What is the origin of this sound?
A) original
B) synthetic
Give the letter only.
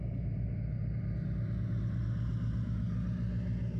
A